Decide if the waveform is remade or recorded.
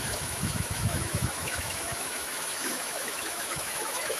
remade